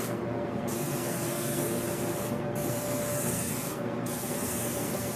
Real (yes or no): no